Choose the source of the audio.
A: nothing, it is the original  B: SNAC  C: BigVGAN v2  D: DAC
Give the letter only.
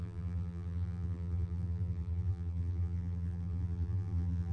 C